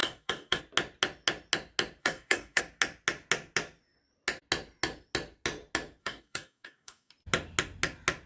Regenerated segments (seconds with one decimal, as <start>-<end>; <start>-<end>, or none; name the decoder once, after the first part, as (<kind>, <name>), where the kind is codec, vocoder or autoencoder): 0.0-0.6 (codec, DAC); 2.0-2.6; 6.0-7.1